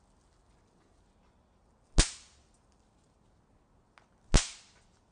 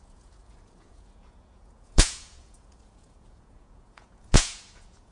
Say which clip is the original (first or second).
first